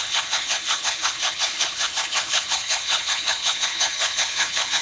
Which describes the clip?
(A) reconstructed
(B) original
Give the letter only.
A